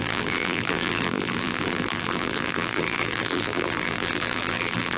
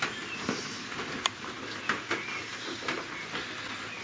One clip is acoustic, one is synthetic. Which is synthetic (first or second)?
first